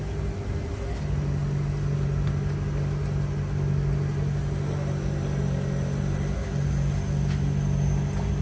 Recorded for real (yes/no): yes